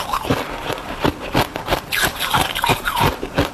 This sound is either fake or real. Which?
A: fake